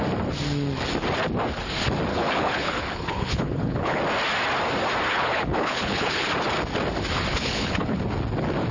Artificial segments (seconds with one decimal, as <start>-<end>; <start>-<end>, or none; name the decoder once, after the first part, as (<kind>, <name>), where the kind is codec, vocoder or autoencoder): 2.1-4.0 (codec, HILCodec); 5.1-6.3; 7.3-8.0

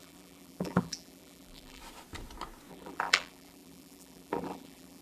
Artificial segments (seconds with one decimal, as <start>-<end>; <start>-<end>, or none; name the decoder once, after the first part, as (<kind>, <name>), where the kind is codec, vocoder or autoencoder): 0.0-1.8 (vocoder, BigVGAN v2); 2.7-5.0

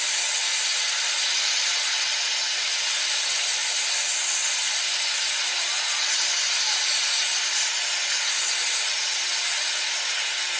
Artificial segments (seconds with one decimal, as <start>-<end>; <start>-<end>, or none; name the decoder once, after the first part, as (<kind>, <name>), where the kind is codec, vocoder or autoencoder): none

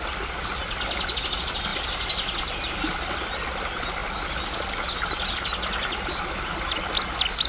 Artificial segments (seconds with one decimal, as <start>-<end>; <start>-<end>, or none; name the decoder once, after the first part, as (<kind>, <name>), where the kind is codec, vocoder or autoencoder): none

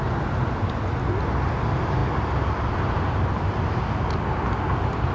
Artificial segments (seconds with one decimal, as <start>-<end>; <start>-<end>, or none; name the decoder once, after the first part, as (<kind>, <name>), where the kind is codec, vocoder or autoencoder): none

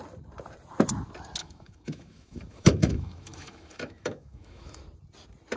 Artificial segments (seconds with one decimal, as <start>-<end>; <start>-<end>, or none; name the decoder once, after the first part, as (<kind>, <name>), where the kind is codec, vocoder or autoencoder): 1.4-4.8 (autoencoder, DAC-VAE)